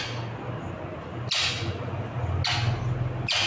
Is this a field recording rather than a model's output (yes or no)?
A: yes